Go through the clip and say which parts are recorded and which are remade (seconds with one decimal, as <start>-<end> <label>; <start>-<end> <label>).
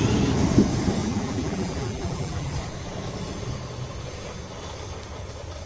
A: 0.0-1.0 recorded; 1.0-2.5 remade; 2.5-5.7 recorded